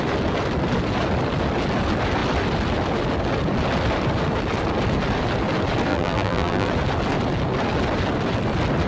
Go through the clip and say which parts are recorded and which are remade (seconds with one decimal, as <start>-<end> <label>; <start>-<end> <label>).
0.0-5.9 recorded; 5.9-6.7 remade; 6.7-8.9 recorded